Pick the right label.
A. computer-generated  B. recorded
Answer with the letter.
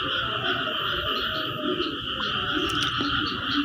A